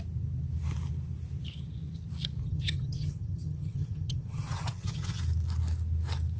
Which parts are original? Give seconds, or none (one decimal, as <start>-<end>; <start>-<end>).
0.0-2.4; 5.2-6.4